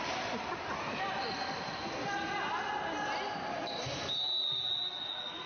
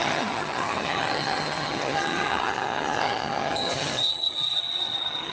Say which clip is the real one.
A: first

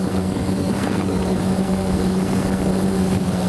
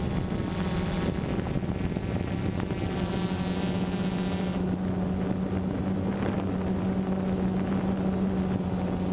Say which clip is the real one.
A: second